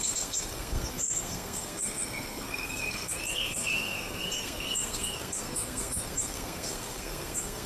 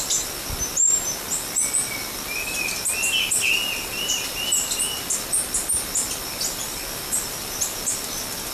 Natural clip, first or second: second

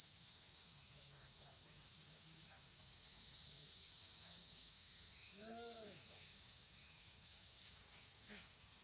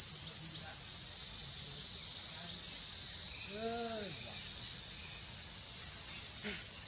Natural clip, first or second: second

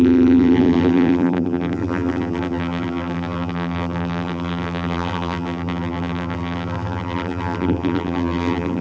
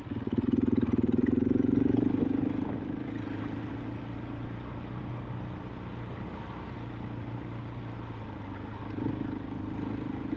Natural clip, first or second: second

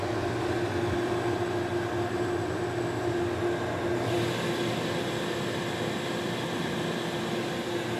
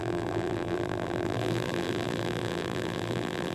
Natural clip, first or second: first